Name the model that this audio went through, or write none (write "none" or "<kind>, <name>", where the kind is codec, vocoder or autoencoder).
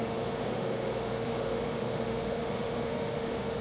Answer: autoencoder, DAC-VAE